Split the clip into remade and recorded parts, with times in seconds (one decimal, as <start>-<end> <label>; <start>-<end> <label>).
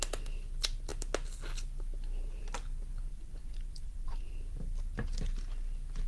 0.0-3.1 recorded; 3.1-4.4 remade; 4.4-6.1 recorded